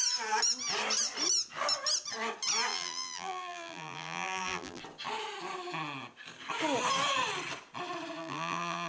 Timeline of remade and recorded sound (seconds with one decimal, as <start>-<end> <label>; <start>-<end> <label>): 0.0-2.7 recorded; 2.7-4.8 remade; 4.8-8.2 recorded; 8.2-8.9 remade